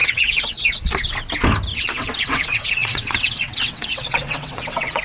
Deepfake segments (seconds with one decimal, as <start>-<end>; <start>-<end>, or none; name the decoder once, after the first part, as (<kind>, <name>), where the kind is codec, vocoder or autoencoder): 0.0-0.9 (vocoder, WaveNeXt); 1.7-5.0